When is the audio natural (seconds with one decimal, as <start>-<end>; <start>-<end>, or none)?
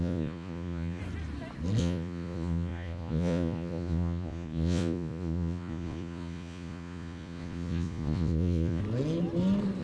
1.0-1.8; 8.8-9.8